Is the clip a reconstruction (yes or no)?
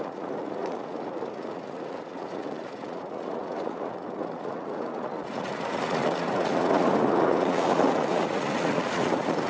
yes